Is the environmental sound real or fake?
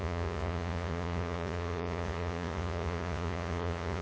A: fake